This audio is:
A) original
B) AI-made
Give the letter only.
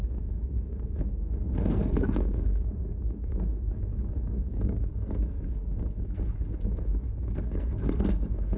B